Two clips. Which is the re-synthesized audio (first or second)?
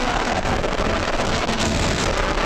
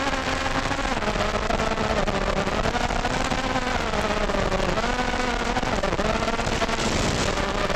first